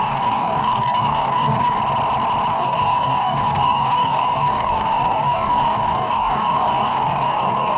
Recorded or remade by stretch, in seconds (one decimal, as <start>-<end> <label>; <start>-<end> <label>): 0.0-1.8 remade; 1.8-2.5 recorded; 2.5-7.8 remade